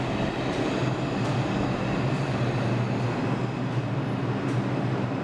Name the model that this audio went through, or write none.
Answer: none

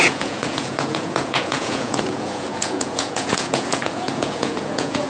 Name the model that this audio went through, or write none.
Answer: vocoder, Vocos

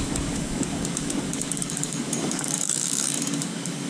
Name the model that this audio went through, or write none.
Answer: codec, DAC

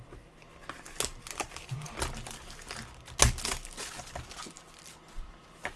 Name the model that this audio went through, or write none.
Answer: none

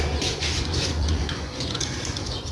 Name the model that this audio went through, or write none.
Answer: vocoder, Vocos